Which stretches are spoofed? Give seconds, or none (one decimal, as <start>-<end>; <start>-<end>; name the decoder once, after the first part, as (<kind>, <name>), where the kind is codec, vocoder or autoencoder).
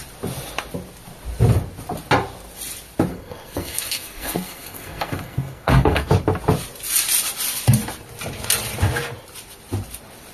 3.1-6.1 (codec, SNAC)